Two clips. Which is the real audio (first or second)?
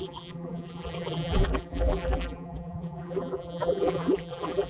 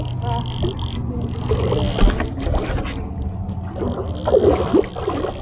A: second